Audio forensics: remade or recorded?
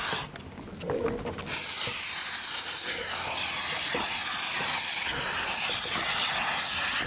recorded